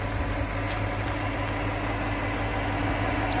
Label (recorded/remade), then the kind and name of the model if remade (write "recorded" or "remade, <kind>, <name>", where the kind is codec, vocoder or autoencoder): recorded